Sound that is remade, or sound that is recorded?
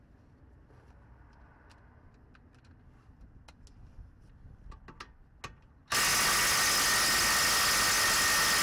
recorded